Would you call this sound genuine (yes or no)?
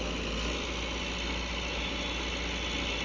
yes